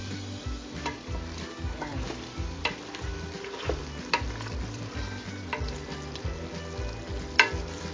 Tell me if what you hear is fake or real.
real